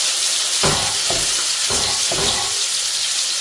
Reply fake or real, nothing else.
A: fake